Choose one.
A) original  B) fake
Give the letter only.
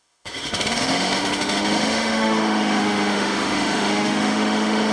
B